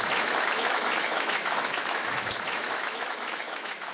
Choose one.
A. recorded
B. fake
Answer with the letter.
B